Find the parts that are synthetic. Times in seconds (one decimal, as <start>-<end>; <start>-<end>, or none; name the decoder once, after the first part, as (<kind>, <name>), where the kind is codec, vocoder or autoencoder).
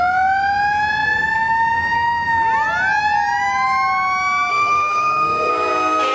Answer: 4.5-5.5 (autoencoder, DAC-VAE)